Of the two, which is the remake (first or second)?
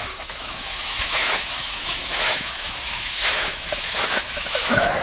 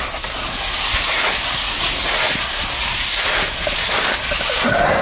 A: first